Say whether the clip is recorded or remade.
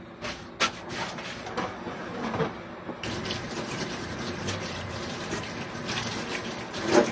recorded